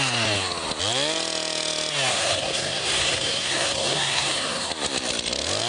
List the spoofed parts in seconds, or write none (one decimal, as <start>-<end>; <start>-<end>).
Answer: 2.1-4.7